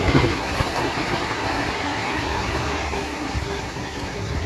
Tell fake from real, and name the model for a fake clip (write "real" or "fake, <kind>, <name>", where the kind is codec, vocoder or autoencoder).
fake, codec, SNAC